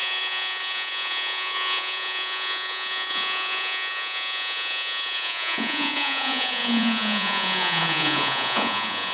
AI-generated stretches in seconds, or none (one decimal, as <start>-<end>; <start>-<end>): 0.0-9.1